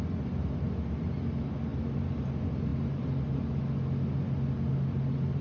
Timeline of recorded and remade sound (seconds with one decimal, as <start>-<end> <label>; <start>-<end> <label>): 0.0-5.4 recorded